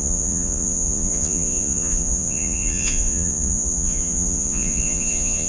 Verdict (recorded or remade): remade